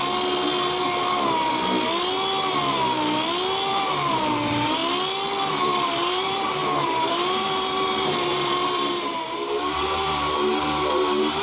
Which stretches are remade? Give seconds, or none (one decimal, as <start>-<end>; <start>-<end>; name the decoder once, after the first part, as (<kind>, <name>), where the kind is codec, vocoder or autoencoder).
3.7-4.8 (vocoder, BigVGAN v2); 5.5-11.4